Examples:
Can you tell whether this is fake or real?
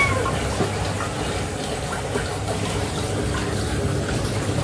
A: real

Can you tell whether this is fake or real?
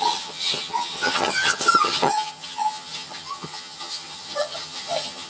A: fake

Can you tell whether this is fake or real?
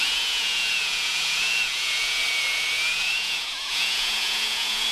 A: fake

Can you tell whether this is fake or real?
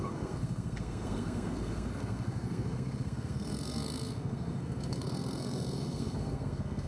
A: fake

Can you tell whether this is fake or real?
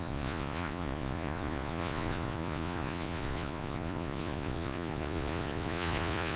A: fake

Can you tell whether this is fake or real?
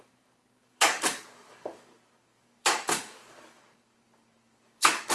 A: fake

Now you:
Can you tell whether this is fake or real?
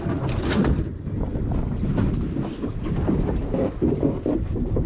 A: real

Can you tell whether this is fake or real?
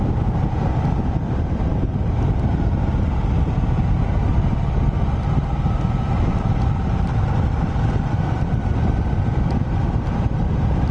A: real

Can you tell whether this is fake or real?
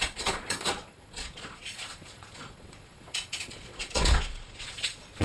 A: fake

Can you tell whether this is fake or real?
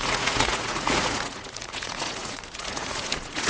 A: fake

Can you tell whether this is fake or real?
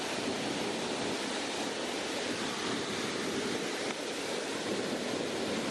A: real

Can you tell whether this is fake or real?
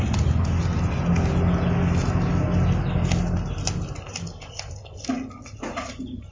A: real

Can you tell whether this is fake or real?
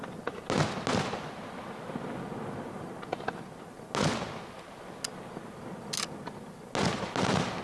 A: real